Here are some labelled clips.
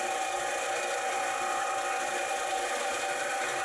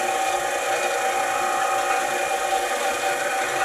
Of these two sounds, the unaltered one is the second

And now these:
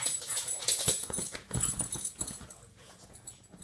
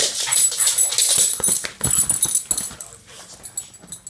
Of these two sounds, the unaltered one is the second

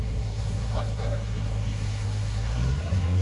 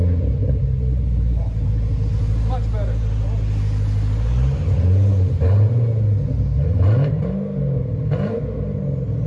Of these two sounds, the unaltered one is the second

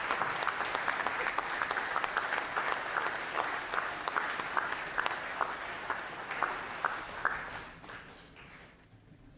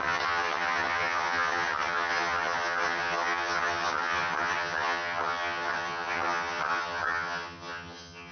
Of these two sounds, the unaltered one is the first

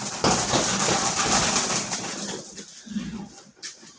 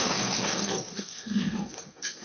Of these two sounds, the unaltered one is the first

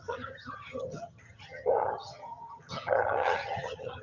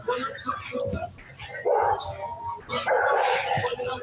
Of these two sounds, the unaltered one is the second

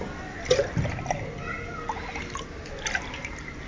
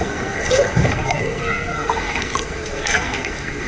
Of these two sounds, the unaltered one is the first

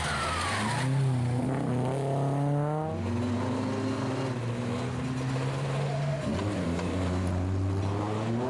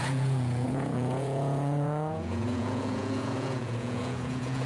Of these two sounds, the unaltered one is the first